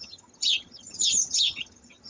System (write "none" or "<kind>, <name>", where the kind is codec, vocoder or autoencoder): vocoder, HiFi-GAN